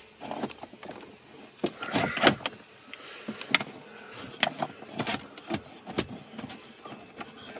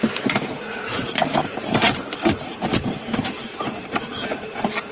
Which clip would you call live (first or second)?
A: first